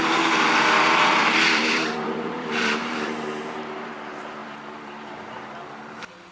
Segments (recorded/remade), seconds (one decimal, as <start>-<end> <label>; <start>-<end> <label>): 0.0-1.2 recorded; 1.2-3.9 remade; 3.9-4.4 recorded; 4.4-5.1 remade; 5.1-6.3 recorded